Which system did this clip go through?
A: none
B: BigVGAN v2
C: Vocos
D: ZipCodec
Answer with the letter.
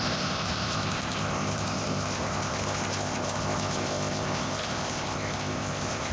D